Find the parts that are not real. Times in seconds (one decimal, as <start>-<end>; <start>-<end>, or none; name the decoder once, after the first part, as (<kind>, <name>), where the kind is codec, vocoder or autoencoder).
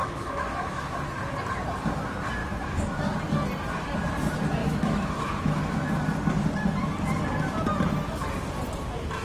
0.0-1.1 (autoencoder, DAC-VAE); 2.4-3.2; 4.6-5.9